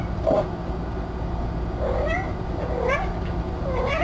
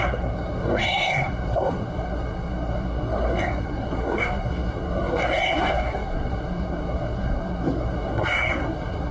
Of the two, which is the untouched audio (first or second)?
first